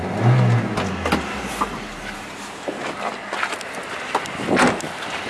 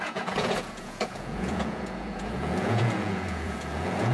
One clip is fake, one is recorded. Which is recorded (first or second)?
first